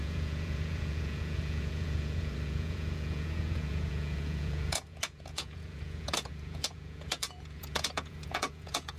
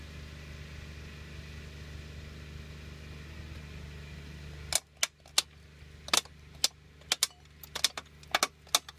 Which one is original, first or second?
second